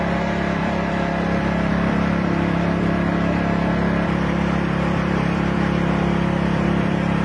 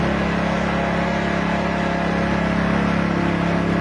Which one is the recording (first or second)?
second